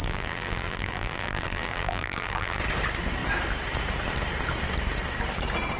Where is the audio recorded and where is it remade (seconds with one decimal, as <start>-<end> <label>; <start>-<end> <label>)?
0.0-2.6 remade; 2.6-5.8 recorded